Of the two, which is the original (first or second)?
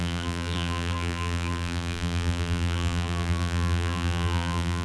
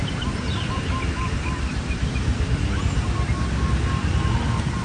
second